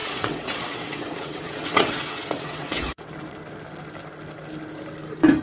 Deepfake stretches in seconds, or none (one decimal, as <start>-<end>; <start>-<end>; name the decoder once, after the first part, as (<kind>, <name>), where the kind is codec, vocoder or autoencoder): 0.0-3.1 (vocoder, WaveNeXt)